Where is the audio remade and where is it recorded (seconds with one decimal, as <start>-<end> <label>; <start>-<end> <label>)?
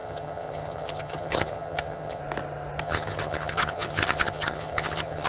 0.0-2.2 remade; 2.2-2.8 recorded; 2.8-5.3 remade